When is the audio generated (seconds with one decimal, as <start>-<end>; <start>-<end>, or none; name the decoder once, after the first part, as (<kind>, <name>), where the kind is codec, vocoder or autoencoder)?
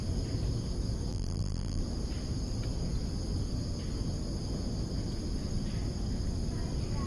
1.1-1.8 (vocoder, BigVGAN v2)